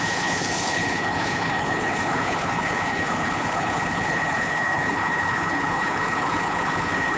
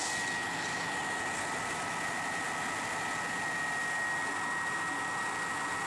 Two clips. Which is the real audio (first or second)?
second